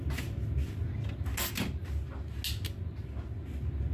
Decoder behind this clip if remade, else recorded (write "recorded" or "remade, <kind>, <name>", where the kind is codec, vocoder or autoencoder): recorded